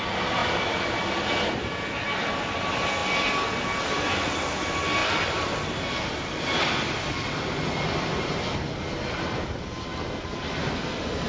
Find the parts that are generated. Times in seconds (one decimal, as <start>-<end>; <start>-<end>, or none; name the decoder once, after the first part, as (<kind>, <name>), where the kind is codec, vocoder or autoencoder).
5.0-5.6 (vocoder, BigVGAN v2)